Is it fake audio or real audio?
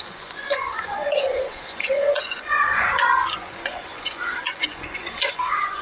fake